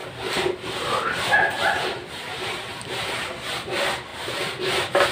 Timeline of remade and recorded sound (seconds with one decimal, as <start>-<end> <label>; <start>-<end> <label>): 0.0-5.1 recorded